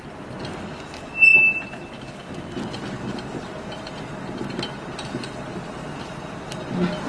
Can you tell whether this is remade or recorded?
recorded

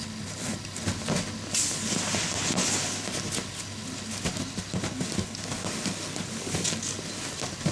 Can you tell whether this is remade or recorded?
recorded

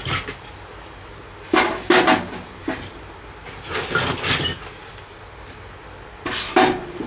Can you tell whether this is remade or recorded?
recorded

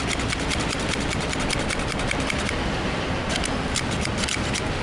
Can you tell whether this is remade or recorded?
recorded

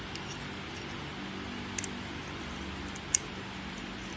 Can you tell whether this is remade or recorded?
recorded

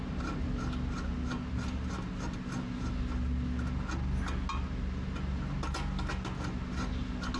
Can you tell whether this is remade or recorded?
recorded